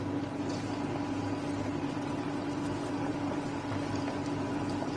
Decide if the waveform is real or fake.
real